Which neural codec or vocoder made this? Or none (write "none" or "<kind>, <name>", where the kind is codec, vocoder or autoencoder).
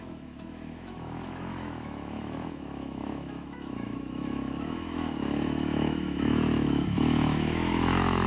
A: autoencoder, DAC-VAE